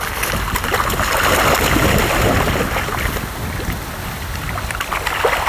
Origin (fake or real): real